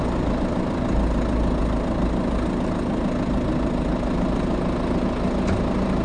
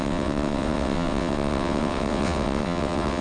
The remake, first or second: second